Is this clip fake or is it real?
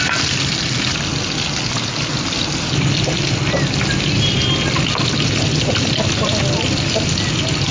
real